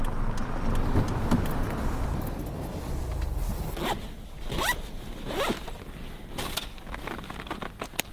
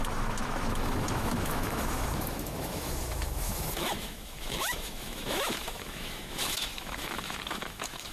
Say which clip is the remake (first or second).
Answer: second